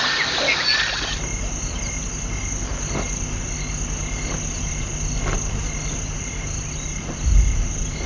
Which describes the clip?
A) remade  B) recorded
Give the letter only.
B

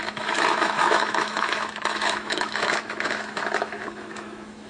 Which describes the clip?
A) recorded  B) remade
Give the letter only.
B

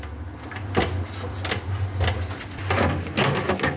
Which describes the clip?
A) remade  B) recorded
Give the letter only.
B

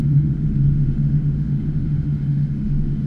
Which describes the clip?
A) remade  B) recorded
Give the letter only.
A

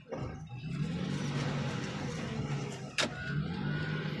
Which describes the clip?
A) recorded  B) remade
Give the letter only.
A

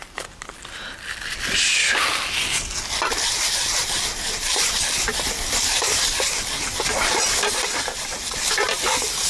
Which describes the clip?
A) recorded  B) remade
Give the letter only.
A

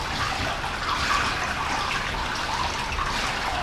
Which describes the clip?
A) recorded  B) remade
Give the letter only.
A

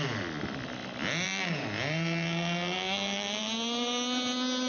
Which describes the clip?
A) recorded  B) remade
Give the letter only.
A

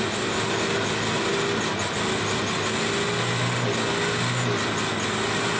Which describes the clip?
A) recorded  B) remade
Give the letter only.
A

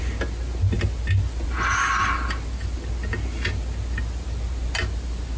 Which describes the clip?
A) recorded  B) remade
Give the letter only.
A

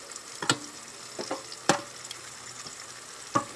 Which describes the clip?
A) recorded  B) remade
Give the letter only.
A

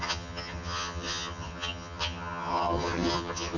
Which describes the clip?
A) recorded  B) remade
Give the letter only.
B